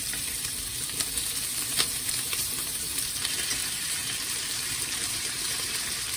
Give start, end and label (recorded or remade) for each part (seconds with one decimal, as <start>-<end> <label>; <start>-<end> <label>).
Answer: 0.0-0.7 remade; 0.7-1.5 recorded; 1.5-6.2 remade

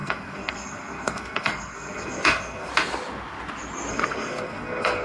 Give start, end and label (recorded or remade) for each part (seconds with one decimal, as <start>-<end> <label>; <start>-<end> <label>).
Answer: 0.0-2.7 remade; 2.7-3.9 recorded; 3.9-5.0 remade

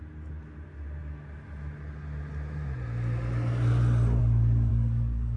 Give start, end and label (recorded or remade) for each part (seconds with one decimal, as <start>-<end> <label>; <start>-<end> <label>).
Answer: 0.0-4.7 recorded; 4.7-5.4 remade

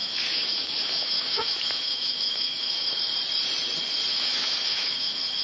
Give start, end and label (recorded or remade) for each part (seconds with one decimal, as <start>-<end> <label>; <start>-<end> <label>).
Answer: 0.0-3.0 remade; 3.0-4.1 recorded; 4.1-5.4 remade

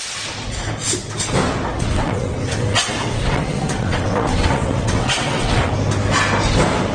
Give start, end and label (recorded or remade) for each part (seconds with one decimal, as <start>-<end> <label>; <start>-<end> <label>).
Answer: 0.0-1.7 recorded; 1.7-5.7 remade; 5.7-6.9 recorded

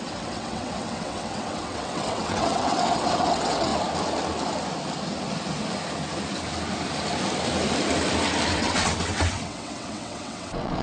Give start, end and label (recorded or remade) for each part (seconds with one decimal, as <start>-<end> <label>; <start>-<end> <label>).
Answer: 0.0-3.7 remade; 3.7-8.5 recorded; 8.5-10.8 remade

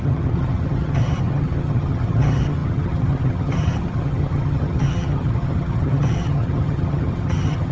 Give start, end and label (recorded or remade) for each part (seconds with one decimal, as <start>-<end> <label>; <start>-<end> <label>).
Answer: 0.0-7.7 remade